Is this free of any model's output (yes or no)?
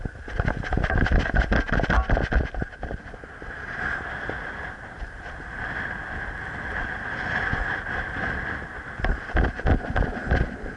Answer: yes